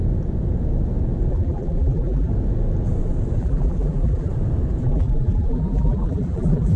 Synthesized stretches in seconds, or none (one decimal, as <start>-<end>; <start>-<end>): 1.3-2.3; 3.4-4.3; 4.8-6.8